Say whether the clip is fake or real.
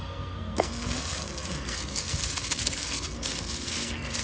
fake